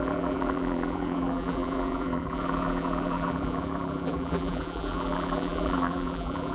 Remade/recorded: remade